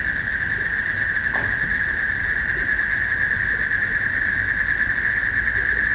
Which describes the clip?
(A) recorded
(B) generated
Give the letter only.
A